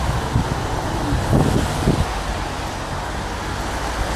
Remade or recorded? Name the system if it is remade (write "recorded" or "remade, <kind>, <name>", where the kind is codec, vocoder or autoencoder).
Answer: recorded